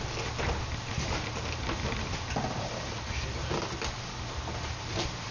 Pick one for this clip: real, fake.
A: real